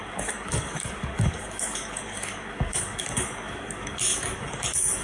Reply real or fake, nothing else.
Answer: fake